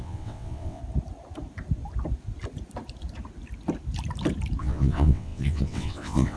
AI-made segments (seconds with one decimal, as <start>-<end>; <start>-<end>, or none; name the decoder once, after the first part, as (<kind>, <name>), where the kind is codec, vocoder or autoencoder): 0.0-0.8 (vocoder, WaveNeXt); 4.6-6.4